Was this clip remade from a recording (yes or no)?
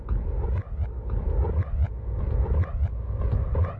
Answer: no